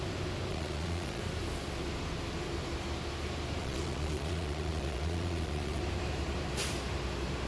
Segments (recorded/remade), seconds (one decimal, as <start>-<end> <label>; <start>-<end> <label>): 0.0-0.5 recorded; 0.5-1.2 remade; 1.2-3.6 recorded; 3.6-5.8 remade; 5.8-7.5 recorded